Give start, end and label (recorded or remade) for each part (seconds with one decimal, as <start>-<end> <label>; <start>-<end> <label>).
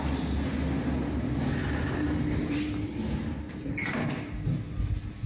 0.0-1.6 recorded; 1.6-4.8 remade; 4.8-5.3 recorded